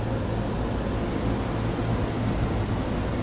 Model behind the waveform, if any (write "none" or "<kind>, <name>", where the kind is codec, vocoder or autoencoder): none